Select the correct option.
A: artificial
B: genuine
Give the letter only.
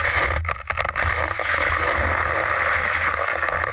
B